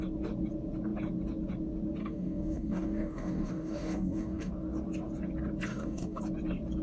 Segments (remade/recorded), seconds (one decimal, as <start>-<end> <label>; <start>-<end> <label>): 0.0-2.0 recorded; 2.0-4.5 remade; 4.5-5.7 recorded; 5.7-6.2 remade; 6.2-6.8 recorded